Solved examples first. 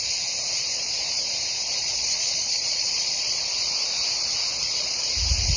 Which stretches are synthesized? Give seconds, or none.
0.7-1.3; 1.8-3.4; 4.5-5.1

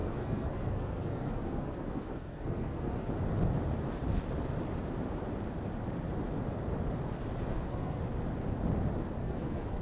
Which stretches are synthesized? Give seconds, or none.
0.0-3.1; 7.5-8.0; 9.2-9.8

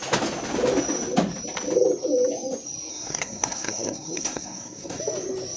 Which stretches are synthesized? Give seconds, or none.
2.9-5.0

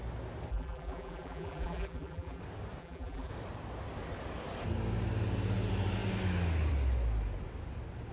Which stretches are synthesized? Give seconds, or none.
0.5-2.4; 2.8-3.3